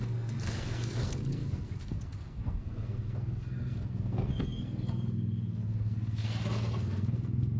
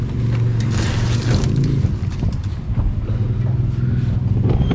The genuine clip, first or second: second